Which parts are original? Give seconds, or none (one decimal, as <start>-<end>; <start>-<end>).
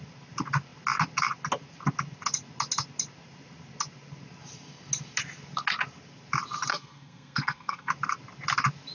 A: 0.0-6.7; 7.9-8.9